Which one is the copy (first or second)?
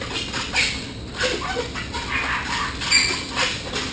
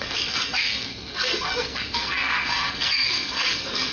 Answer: second